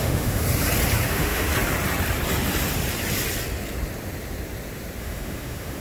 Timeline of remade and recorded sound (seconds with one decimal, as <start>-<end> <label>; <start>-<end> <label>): 0.0-0.4 remade; 0.4-1.1 recorded; 1.1-1.5 remade; 1.5-5.0 recorded; 5.0-5.8 remade